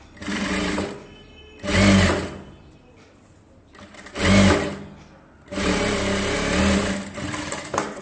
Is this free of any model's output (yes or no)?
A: yes